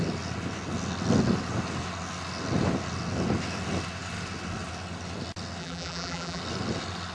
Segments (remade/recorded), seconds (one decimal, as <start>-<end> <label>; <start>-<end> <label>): 0.0-5.6 recorded; 5.6-6.4 remade; 6.4-7.1 recorded